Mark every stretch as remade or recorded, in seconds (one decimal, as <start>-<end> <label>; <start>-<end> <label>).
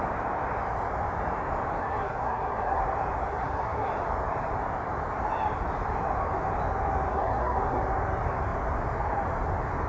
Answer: 0.0-1.8 recorded; 1.8-2.8 remade; 2.8-3.3 recorded; 3.3-3.9 remade; 3.9-7.1 recorded; 7.1-7.8 remade; 7.8-9.9 recorded